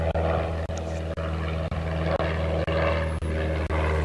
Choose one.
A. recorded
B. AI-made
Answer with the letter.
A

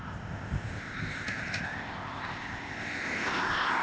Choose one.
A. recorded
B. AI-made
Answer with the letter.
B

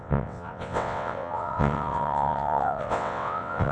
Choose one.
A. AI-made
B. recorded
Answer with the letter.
A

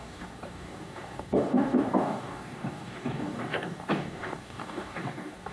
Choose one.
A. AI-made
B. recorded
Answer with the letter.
A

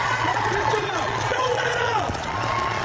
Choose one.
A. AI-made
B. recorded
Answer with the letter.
A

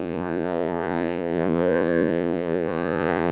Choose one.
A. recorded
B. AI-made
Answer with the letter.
B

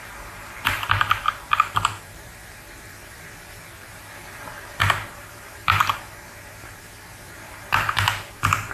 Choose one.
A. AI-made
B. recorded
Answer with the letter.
A